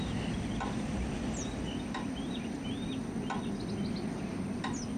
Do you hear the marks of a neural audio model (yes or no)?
no